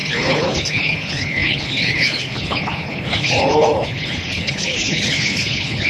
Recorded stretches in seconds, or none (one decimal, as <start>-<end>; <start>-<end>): none